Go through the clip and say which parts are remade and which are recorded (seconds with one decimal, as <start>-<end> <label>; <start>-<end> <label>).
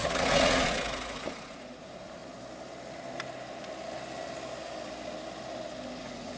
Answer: 0.0-2.2 remade; 2.2-6.0 recorded; 6.0-6.4 remade